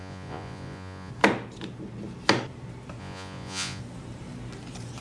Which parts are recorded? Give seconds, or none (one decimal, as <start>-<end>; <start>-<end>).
1.1-3.0; 3.8-5.0